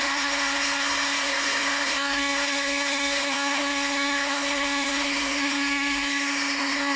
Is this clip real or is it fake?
fake